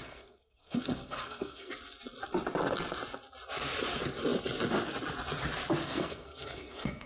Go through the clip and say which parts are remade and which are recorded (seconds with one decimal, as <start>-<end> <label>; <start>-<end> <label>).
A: 0.0-1.7 remade; 1.7-5.8 recorded; 5.8-7.1 remade